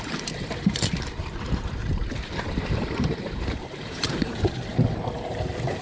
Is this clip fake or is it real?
fake